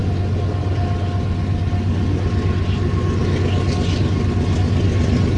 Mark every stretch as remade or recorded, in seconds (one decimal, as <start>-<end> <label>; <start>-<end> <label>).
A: 0.0-5.4 recorded